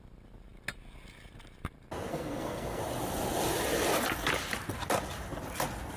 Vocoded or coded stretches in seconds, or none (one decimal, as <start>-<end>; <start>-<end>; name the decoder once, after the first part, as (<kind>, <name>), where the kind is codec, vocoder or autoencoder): 2.1-2.8 (codec, SNAC)